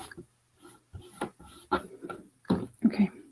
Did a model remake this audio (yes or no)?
no